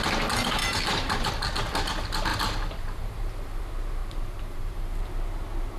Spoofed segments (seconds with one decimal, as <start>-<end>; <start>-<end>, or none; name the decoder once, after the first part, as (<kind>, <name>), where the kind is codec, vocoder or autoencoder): 0.6-1.3 (vocoder, BigVGAN v2); 2.3-3.6; 4.0-5.0